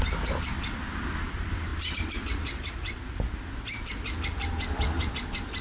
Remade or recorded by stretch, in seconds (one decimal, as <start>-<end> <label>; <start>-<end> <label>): 0.0-1.7 remade; 1.7-5.1 recorded; 5.1-5.6 remade